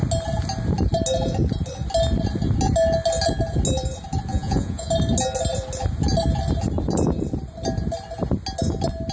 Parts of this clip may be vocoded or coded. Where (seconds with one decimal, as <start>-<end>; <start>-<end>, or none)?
4.3-4.9